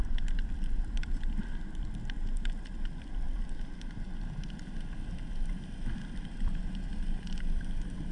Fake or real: real